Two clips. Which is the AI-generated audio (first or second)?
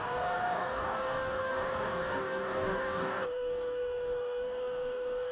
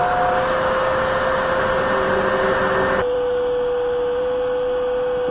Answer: first